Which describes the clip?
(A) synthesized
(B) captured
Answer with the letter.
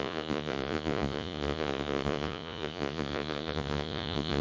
A